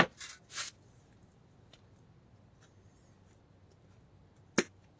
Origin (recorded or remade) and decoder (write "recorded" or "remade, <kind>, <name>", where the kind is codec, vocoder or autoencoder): recorded